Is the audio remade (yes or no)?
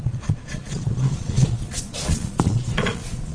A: yes